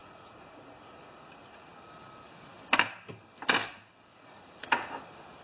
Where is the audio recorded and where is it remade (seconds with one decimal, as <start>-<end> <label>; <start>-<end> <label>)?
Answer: 0.0-1.7 remade; 1.7-4.1 recorded; 4.1-4.9 remade; 4.9-5.4 recorded